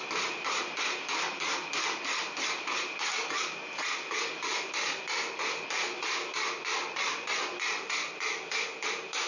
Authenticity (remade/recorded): recorded